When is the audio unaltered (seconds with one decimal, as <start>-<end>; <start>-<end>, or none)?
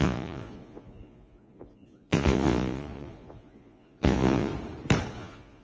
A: 4.5-5.1